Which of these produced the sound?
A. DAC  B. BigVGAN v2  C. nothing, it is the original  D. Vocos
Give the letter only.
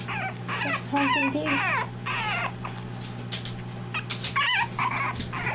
C